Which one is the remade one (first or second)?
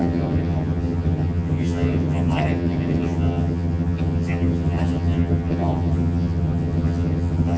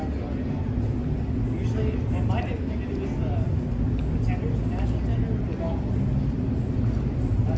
first